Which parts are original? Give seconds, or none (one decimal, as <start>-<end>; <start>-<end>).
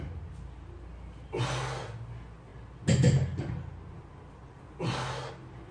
0.0-5.7